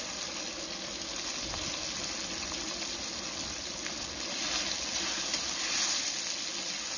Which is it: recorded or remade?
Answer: recorded